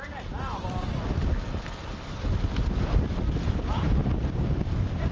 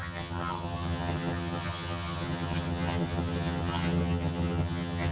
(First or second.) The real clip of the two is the first